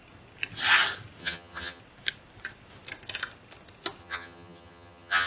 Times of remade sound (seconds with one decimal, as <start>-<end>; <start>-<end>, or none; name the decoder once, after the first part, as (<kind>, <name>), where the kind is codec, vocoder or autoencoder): 1.2-1.8 (vocoder, HiFi-GAN); 4.0-5.3